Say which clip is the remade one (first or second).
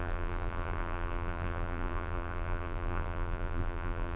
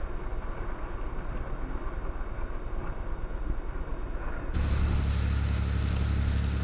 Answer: first